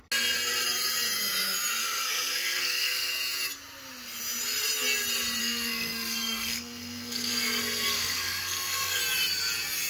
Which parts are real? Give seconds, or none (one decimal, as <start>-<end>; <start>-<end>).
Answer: 0.0-1.8; 3.1-5.4; 9.0-9.9